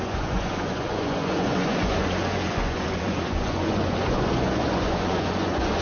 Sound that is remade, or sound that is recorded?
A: remade